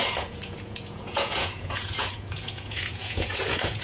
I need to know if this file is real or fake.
fake